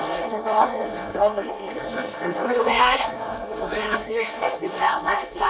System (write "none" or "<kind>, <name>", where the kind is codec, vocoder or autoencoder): codec, SNAC